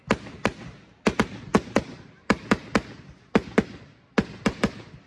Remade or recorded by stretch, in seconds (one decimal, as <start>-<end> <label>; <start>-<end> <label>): 0.0-5.1 recorded